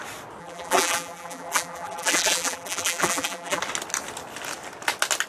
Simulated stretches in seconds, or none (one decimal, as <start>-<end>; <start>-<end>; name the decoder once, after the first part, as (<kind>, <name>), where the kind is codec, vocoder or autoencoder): 0.4-3.6 (vocoder, BigVGAN v2)